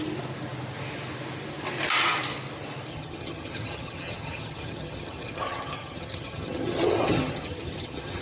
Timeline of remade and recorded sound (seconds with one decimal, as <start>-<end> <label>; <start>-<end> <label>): 0.0-2.9 recorded; 2.9-8.2 remade